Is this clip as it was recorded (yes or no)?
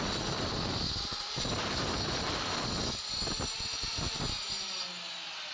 yes